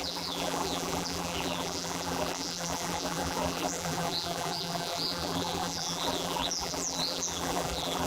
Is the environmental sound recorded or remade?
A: remade